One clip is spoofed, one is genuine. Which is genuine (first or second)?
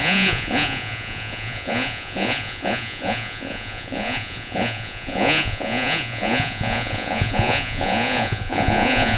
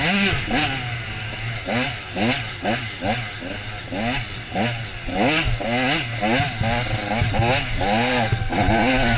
second